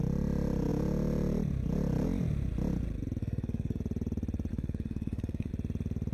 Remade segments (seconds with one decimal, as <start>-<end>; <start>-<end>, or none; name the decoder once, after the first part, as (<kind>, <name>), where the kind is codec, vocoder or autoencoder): 3.2-3.8 (codec, SNAC); 4.5-5.5